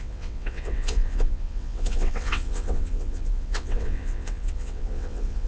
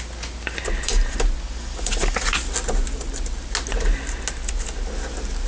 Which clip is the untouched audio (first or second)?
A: second